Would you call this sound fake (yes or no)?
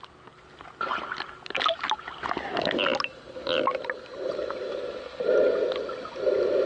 no